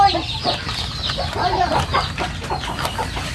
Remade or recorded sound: remade